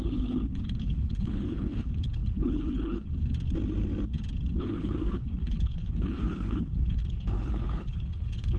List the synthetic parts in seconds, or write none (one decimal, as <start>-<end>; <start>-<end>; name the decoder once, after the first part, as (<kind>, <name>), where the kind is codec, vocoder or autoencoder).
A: 0.0-3.1 (codec, HILCodec); 4.6-8.6